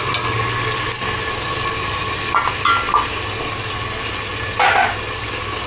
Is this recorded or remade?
recorded